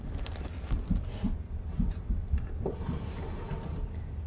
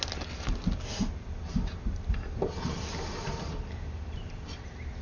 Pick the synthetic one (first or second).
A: first